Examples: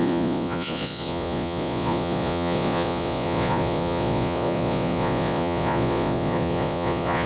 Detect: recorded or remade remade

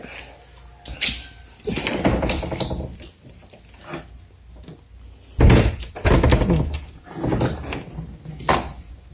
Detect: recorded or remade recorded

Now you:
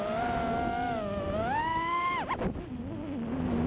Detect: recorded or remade recorded